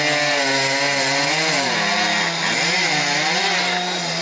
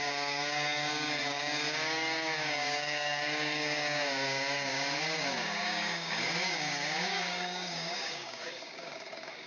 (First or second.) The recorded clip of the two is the first